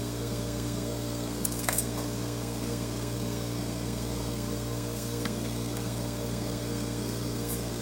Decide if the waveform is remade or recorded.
remade